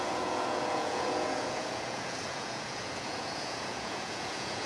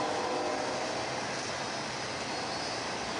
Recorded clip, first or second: second